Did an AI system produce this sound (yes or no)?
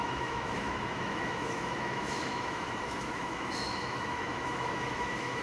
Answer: yes